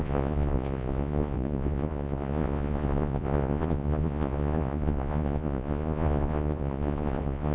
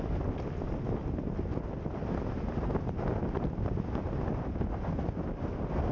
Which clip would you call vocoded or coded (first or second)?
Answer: first